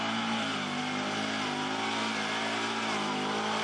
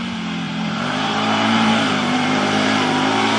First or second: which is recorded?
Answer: first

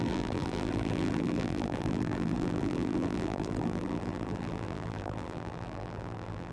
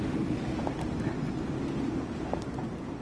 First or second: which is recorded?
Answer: second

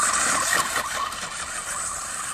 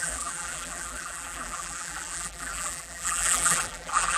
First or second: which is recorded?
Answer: first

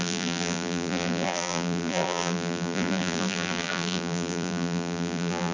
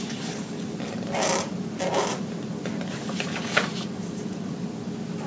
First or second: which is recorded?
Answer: second